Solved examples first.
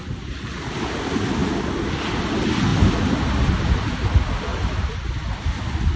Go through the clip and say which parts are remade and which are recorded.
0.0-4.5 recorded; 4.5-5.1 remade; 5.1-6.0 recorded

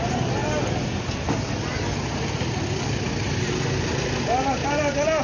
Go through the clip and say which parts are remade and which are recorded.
0.0-5.2 recorded

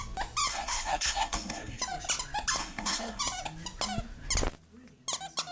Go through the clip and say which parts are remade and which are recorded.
0.0-0.5 recorded; 0.5-1.8 remade; 1.8-2.6 recorded; 2.6-3.2 remade; 3.2-5.5 recorded

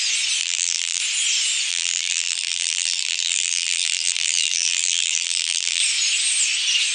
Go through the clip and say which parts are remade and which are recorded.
0.0-0.4 recorded; 0.4-1.0 remade; 1.0-1.7 recorded; 1.7-5.8 remade; 5.8-6.9 recorded

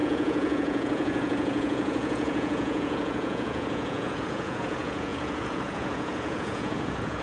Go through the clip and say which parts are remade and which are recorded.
0.0-7.2 remade

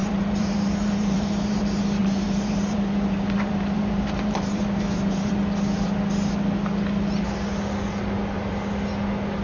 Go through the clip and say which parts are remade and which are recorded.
0.0-1.6 remade; 1.6-2.0 recorded; 2.0-5.3 remade; 5.3-9.4 recorded

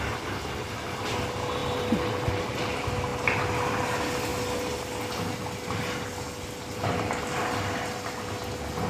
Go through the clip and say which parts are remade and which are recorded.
0.0-8.9 recorded